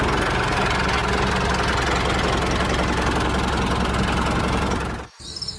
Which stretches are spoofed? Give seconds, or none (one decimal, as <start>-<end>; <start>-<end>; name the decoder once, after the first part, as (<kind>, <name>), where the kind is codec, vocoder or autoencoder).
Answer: none